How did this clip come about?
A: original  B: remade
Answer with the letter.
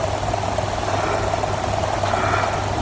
A